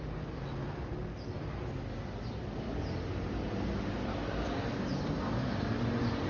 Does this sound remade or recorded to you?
recorded